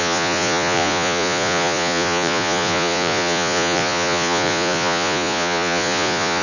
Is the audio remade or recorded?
remade